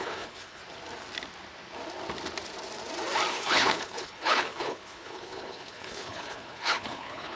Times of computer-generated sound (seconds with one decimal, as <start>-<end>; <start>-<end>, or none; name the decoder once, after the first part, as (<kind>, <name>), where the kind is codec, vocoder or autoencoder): 0.0-0.6 (codec, HILCodec); 3.3-7.4